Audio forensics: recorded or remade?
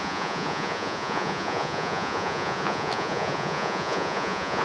remade